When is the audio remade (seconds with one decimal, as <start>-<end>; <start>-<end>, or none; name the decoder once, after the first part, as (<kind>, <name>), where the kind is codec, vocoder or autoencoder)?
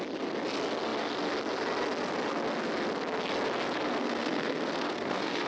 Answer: 4.0-5.5 (codec, SNAC)